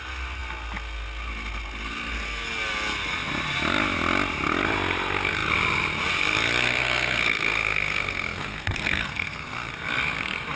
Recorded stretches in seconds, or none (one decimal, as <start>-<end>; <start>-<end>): 0.0-6.6; 9.7-10.6